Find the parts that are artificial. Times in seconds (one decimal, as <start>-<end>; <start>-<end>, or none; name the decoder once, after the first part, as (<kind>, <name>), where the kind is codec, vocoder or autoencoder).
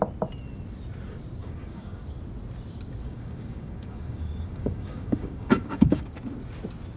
1.4-2.0 (codec, DAC); 3.0-6.1